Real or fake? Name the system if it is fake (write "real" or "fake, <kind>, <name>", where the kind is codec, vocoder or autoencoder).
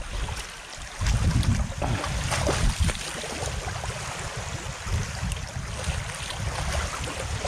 real